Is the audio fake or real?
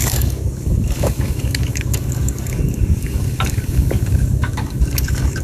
fake